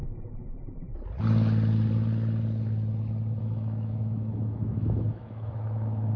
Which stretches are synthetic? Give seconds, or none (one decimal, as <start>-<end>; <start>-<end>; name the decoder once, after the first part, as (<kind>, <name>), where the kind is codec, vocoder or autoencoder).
3.4-6.2 (autoencoder, DAC-VAE)